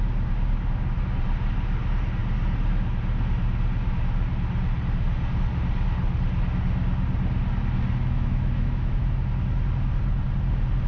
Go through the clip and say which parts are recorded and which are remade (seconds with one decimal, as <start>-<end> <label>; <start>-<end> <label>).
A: 0.0-8.0 recorded; 8.0-9.0 remade; 9.0-10.9 recorded